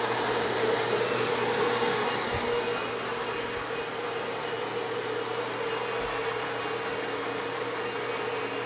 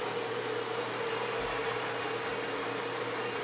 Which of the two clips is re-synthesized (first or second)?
second